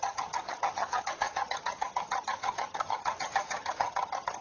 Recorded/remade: remade